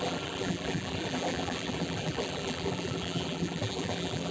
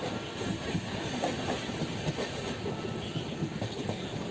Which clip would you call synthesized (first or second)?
first